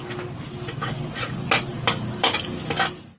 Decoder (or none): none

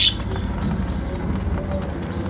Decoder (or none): none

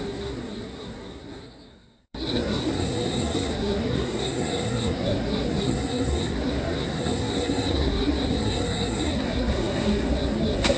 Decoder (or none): codec, SNAC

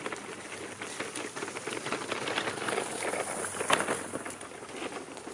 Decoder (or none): none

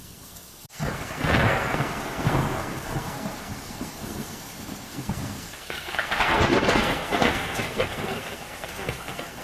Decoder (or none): codec, SNAC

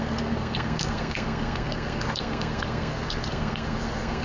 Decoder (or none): codec, SNAC